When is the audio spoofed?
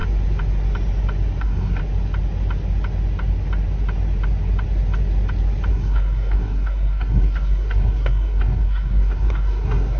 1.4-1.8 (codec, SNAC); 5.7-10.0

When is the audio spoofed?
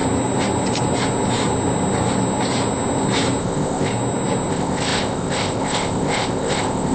3.4-3.9 (codec, ZipCodec); 4.5-6.9